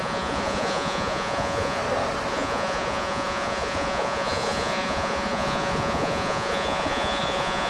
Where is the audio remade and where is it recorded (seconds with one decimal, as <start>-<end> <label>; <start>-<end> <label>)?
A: 0.0-1.8 remade; 1.8-2.3 recorded; 2.3-7.7 remade